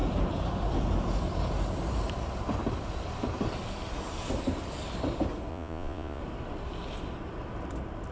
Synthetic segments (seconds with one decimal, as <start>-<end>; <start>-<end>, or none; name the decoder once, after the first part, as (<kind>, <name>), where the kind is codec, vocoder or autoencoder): 5.5-6.2 (vocoder, Vocos)